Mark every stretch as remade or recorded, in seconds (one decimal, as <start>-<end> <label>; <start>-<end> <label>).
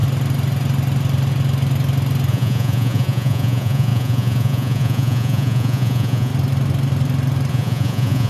0.0-2.3 recorded; 2.3-6.3 remade; 6.3-7.5 recorded; 7.5-8.3 remade